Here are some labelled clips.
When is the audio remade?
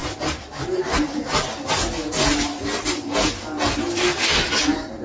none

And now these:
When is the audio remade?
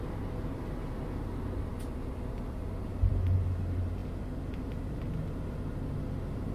none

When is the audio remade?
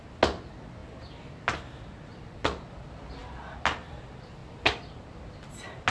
none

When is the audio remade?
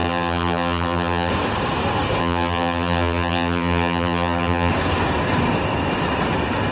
0.0-1.3 (vocoder, BigVGAN v2); 2.2-4.7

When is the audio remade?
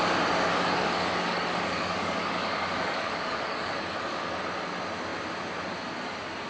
0.5-4.4 (codec, DAC)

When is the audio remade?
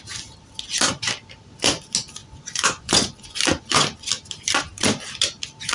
2.2-3.4 (vocoder, Vocos)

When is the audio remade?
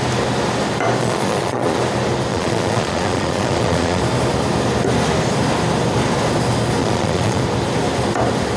1.0-1.8 (vocoder, Vocos); 2.3-4.0; 6.8-7.4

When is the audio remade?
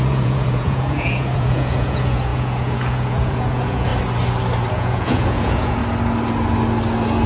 0.0-3.9 (vocoder, Vocos); 4.7-5.8